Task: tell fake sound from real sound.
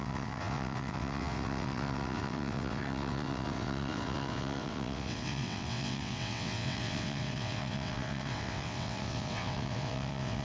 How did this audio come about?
fake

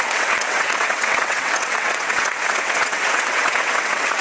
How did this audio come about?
fake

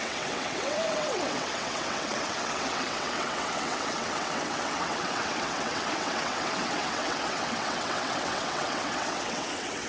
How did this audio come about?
fake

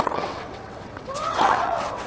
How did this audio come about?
fake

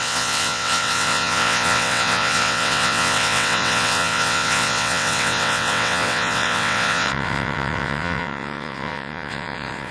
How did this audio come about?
fake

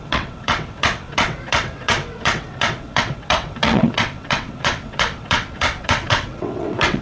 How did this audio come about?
fake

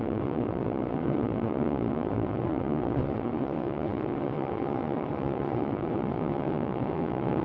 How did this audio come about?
fake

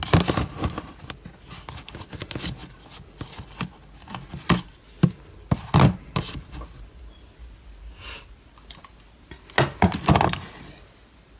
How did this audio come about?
real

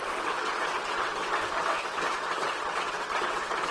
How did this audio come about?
fake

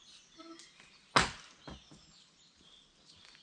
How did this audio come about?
real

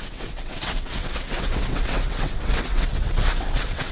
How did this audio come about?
fake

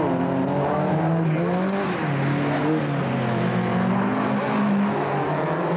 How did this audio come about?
real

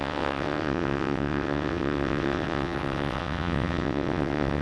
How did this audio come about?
fake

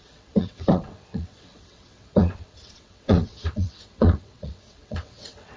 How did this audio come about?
fake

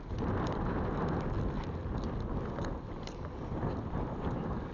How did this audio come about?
real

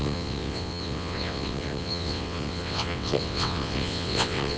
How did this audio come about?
fake